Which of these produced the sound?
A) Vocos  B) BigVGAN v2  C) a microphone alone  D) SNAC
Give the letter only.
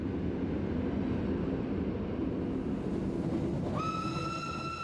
C